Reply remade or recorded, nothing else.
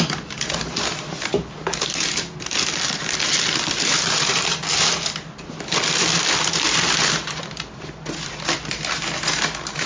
recorded